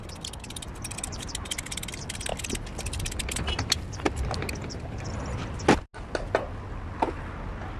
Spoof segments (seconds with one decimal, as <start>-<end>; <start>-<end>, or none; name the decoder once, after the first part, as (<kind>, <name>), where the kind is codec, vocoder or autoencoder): none